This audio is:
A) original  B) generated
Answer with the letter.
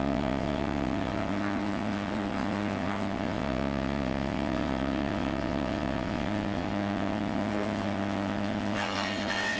B